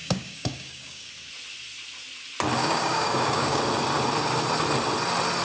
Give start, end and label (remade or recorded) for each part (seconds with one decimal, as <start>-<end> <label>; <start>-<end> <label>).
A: 0.0-1.1 remade; 1.1-2.6 recorded; 2.6-3.6 remade; 3.6-5.4 recorded